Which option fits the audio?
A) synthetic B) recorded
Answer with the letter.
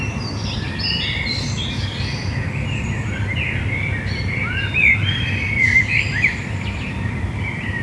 A